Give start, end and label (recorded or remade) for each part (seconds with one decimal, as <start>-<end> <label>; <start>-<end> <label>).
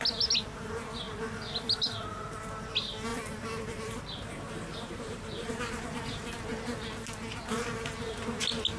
0.0-3.1 recorded; 3.1-5.5 remade; 5.5-8.8 recorded